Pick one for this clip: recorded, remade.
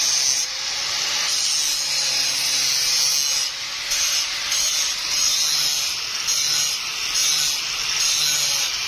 recorded